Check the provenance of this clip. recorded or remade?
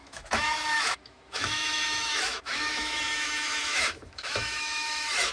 remade